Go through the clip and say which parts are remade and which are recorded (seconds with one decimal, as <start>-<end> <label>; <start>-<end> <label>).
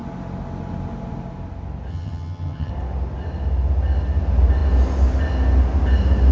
0.0-1.9 recorded; 1.9-2.7 remade; 2.7-6.3 recorded